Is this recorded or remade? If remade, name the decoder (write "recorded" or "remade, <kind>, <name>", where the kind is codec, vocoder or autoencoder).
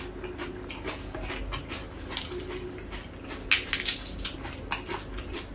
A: recorded